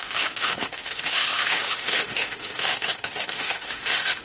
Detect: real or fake fake